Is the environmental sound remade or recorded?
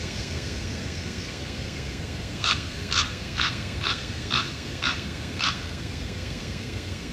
remade